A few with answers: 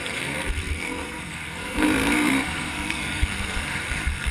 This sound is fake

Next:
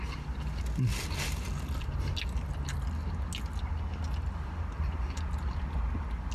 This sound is real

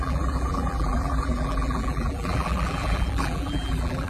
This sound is fake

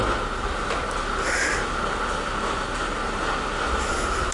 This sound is real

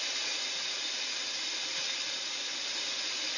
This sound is real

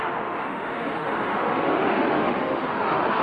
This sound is fake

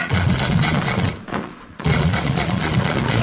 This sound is fake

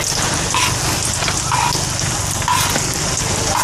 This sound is real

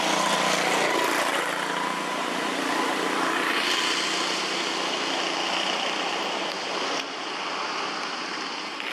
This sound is real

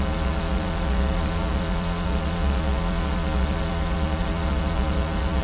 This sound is fake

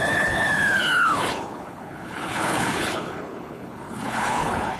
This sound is fake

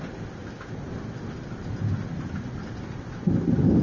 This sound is real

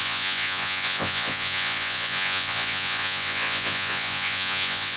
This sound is fake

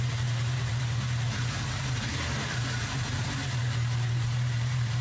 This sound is fake